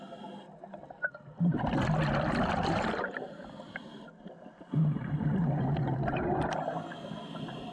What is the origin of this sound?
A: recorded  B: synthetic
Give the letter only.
A